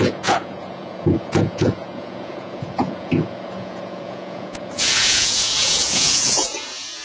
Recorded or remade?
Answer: remade